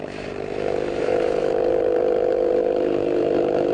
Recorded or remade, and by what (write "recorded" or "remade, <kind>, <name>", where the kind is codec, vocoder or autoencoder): remade, vocoder, BigVGAN v2